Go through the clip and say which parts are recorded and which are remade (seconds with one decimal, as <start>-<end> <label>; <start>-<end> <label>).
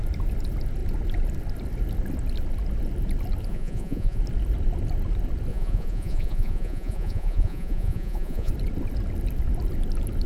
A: 0.0-3.5 recorded; 3.5-4.2 remade; 4.2-5.5 recorded; 5.5-8.5 remade; 8.5-10.3 recorded